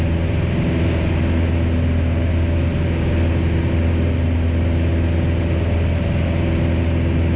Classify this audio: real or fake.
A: real